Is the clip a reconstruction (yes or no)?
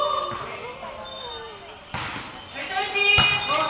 no